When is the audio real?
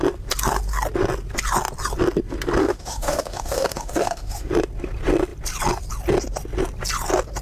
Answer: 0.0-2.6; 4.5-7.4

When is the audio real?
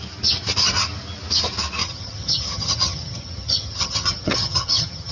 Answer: 0.0-1.8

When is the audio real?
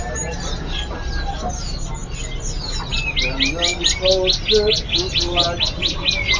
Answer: 0.0-6.4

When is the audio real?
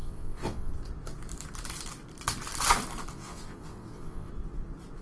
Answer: 0.7-3.1; 4.3-5.0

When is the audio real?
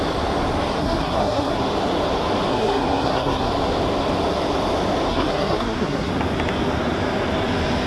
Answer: 0.0-0.8; 1.6-2.5; 3.5-5.1; 6.1-7.9